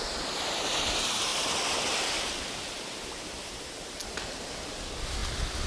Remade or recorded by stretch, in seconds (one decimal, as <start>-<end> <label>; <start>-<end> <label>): 0.0-5.7 recorded